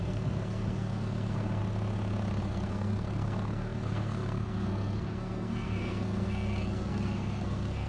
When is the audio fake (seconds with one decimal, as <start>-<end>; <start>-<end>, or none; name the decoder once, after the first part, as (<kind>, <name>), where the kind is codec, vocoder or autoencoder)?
0.0-1.6 (codec, SNAC); 2.4-7.9